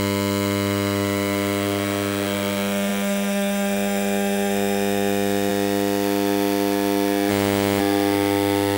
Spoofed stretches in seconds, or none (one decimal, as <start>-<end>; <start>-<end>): 0.0-7.3; 7.8-8.8